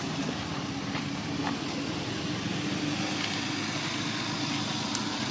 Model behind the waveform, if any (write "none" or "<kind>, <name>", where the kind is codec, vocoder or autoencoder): none